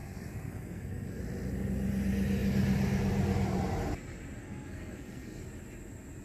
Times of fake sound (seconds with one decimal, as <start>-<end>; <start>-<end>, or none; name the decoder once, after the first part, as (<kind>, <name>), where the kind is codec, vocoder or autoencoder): 0.0-1.2 (codec, SNAC); 4.4-5.4